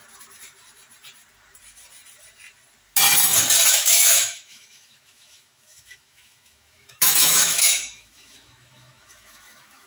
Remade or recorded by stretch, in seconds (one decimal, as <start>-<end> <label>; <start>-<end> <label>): 0.0-3.7 recorded; 3.7-9.9 remade